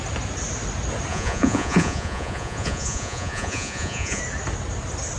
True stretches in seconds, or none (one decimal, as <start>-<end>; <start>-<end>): 0.0-1.1; 4.2-5.2